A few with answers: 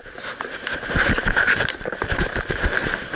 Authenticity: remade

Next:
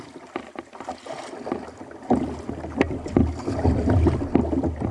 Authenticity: recorded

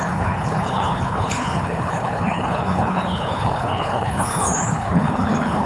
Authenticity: remade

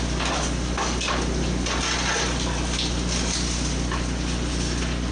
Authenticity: recorded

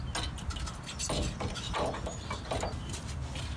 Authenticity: recorded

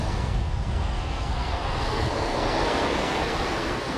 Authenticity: remade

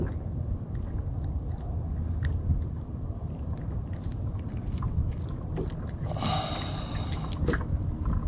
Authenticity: recorded